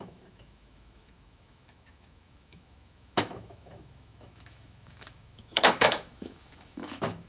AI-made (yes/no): yes